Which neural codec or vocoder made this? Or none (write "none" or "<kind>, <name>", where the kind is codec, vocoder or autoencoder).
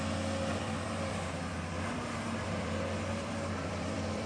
vocoder, BigVGAN v2